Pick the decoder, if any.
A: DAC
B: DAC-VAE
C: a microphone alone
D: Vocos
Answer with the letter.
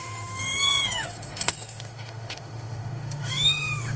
B